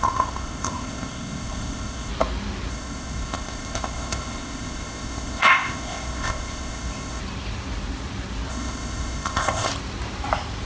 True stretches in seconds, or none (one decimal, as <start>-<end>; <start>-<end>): 2.1-2.7; 7.2-8.5; 9.7-10.7